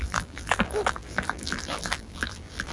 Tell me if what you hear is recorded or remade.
remade